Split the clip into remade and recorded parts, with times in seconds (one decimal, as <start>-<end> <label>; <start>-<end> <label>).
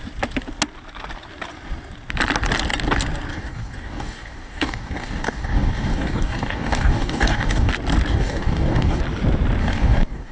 0.0-3.3 recorded; 3.3-7.7 remade; 7.7-8.1 recorded; 8.1-9.0 remade; 9.0-9.6 recorded; 9.6-10.3 remade